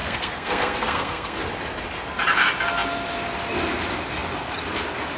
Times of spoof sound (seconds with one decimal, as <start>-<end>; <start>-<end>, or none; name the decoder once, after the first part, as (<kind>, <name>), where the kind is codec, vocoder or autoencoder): 0.0-1.4 (codec, SNAC)